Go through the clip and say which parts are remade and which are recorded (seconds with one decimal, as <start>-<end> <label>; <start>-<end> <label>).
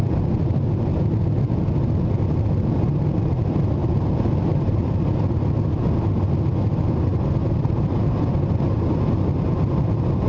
0.0-3.8 recorded; 3.8-5.1 remade; 5.1-7.1 recorded; 7.1-8.2 remade; 8.2-10.3 recorded